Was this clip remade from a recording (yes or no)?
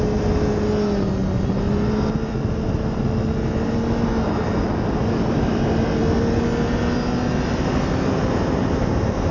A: no